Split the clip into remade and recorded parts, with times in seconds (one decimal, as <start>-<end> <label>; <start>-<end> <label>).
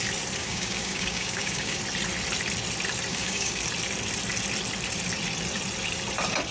0.0-0.4 recorded; 0.4-1.8 remade; 1.8-3.1 recorded; 3.1-3.6 remade; 3.6-6.5 recorded